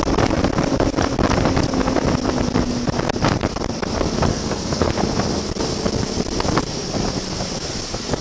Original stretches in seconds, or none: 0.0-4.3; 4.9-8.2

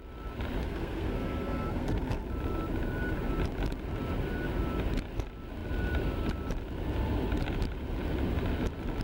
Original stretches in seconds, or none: 0.0-0.6; 2.2-9.0

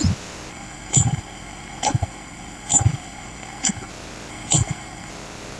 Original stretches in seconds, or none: 0.0-0.5; 3.9-4.3; 5.1-5.6

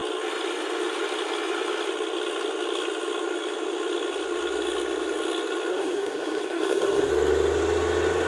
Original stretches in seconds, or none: 0.0-5.7; 7.1-8.3